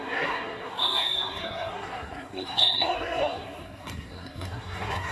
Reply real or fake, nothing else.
fake